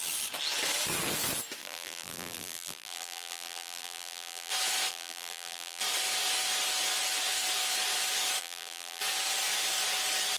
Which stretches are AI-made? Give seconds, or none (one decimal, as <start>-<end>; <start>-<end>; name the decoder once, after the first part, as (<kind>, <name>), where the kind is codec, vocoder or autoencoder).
1.6-4.5 (vocoder, BigVGAN v2); 4.9-5.8; 8.4-9.0